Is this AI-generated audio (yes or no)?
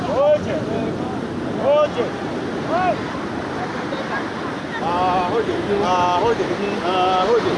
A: no